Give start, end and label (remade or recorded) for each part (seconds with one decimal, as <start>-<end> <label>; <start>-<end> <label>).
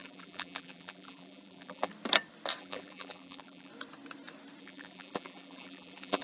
0.0-1.9 remade; 1.9-2.6 recorded; 2.6-3.7 remade; 3.7-4.6 recorded; 4.6-6.2 remade